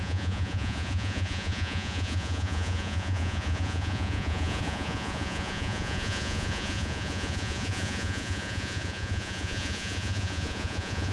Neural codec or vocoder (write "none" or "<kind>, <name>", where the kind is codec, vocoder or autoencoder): vocoder, Vocos